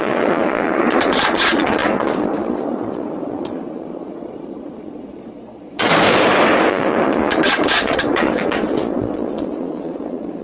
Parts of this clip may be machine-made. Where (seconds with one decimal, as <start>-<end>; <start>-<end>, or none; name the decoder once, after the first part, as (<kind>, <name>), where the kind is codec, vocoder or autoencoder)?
0.0-5.9 (vocoder, Vocos); 6.7-10.4